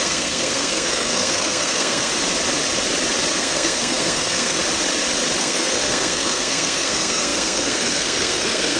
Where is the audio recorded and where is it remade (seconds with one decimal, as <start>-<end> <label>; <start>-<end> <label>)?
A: 0.0-2.1 remade; 2.1-3.3 recorded; 3.3-4.6 remade; 4.6-5.4 recorded; 5.4-8.8 remade